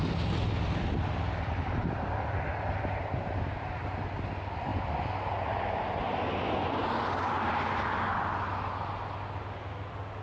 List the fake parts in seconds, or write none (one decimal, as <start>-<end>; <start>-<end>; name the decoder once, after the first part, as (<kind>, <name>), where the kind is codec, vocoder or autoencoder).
none